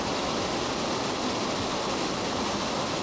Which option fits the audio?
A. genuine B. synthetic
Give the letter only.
A